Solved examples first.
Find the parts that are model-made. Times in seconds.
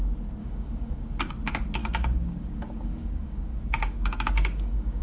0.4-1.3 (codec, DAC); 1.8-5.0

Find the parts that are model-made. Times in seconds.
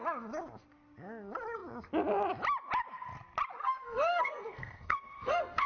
3.6-5.7 (codec, SNAC)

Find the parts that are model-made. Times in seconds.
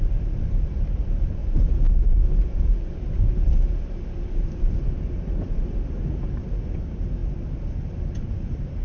0.0-1.4 (vocoder, BigVGAN v2); 4.9-8.8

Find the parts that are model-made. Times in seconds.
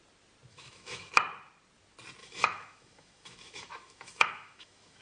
0.5-1.1 (autoencoder, DAC-VAE); 2.2-5.0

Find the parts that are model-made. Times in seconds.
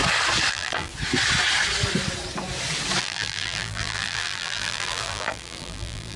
0.5-0.9 (vocoder, BigVGAN v2); 3.0-6.2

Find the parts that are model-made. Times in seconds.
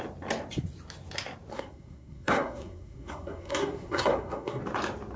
1.5-4.6 (codec, SNAC)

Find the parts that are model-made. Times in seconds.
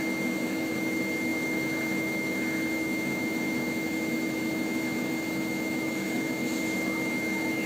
0.0-7.7 (autoencoder, DAC-VAE)